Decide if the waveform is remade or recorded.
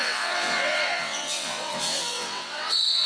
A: remade